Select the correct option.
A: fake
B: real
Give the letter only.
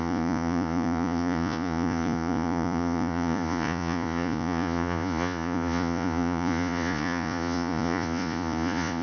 A